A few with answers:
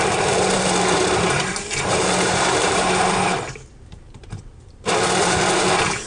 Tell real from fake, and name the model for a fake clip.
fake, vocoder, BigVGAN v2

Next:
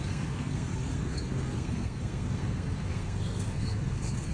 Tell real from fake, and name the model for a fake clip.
fake, codec, SNAC